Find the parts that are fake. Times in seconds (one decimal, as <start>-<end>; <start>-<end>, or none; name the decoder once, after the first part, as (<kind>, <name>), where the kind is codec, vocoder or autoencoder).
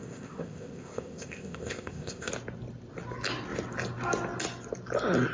0.0-2.3 (codec, ZipCodec)